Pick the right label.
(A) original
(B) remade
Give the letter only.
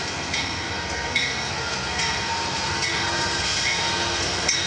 B